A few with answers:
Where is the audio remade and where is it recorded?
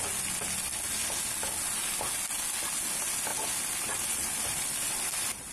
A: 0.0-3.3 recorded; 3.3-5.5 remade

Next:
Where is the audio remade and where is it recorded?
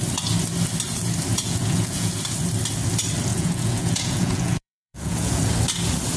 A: 0.0-1.3 recorded; 1.3-2.1 remade; 2.1-3.3 recorded; 3.3-5.4 remade; 5.4-6.2 recorded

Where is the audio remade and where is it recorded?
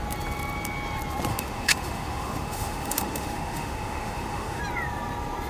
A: 0.0-1.3 recorded; 1.3-4.6 remade; 4.6-5.5 recorded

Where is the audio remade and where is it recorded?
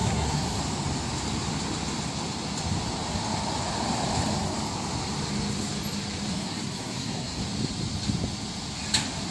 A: 0.0-0.6 remade; 0.6-6.3 recorded; 6.3-7.4 remade; 7.4-9.3 recorded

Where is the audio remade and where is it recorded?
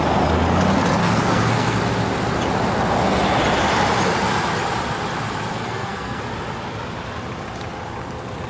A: 0.0-1.0 recorded; 1.0-1.8 remade; 1.8-5.5 recorded; 5.5-6.2 remade; 6.2-8.5 recorded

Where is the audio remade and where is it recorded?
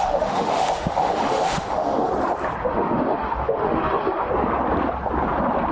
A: 0.0-2.1 remade; 2.1-2.6 recorded; 2.6-4.3 remade; 4.3-5.7 recorded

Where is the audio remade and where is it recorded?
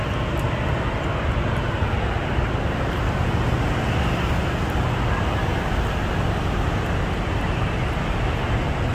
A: 0.0-8.9 recorded